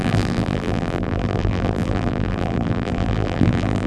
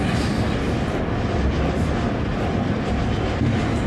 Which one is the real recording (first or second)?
second